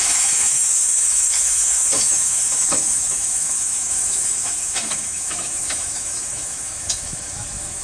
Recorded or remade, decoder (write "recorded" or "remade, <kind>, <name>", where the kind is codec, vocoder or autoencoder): remade, autoencoder, DAC-VAE